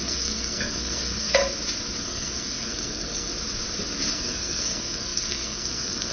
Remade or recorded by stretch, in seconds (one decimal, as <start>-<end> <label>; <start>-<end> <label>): 0.0-1.4 remade; 1.4-2.0 recorded; 2.0-3.3 remade; 3.3-4.1 recorded; 4.1-6.1 remade